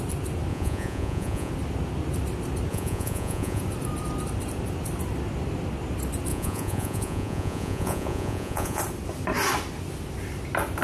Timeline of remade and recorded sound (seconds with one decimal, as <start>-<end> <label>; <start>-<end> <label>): 0.0-0.5 recorded; 0.5-1.5 remade; 1.5-2.7 recorded; 2.7-3.6 remade; 3.6-6.3 recorded; 6.3-8.8 remade; 8.8-10.8 recorded